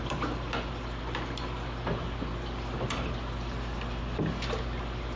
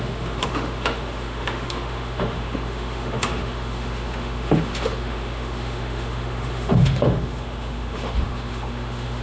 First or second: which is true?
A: first